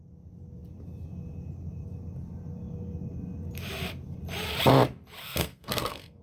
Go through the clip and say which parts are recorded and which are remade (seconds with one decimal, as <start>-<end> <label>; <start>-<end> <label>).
0.0-5.2 recorded; 5.2-6.2 remade